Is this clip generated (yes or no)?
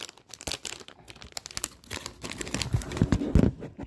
no